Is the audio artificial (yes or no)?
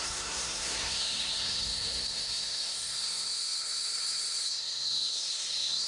yes